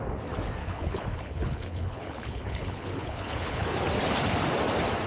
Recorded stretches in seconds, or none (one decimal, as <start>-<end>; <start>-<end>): 0.0-0.6; 3.7-5.1